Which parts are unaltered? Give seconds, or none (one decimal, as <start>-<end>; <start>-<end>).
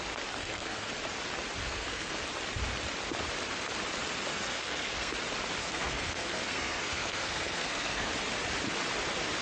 0.0-0.4; 0.9-1.6; 2.2-4.3; 5.1-5.6; 8.1-9.4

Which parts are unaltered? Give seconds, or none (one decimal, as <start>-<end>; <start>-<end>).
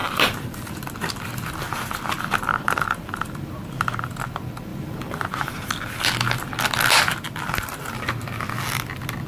0.7-2.5; 3.6-4.7; 5.7-9.3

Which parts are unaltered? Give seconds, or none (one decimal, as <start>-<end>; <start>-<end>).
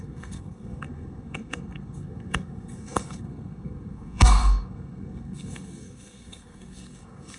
none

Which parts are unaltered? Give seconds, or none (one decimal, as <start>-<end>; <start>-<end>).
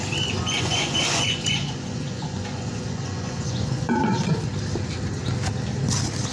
0.0-0.4; 4.2-6.3